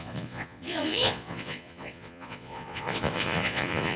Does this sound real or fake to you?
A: fake